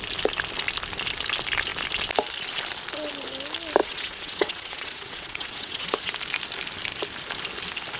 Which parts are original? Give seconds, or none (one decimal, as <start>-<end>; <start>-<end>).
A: 0.0-3.8; 6.1-8.0